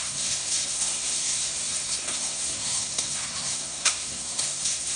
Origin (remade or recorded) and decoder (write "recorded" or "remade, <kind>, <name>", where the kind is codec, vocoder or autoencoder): remade, codec, SNAC